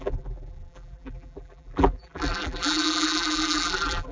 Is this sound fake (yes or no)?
yes